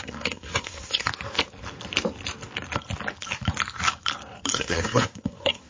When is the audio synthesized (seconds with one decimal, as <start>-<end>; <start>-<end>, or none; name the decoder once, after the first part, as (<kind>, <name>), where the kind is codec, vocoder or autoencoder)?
0.0-1.1 (codec, SNAC); 4.5-5.7